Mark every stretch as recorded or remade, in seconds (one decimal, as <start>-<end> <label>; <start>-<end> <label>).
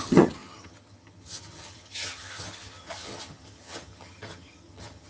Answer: 0.0-5.1 remade